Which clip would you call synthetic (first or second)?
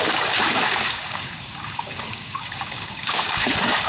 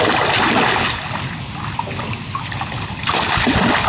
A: first